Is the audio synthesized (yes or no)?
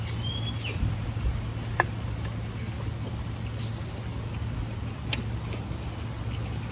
no